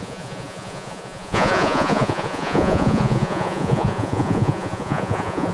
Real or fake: fake